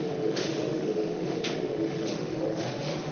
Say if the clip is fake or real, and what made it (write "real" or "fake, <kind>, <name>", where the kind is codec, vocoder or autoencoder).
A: fake, autoencoder, DAC-VAE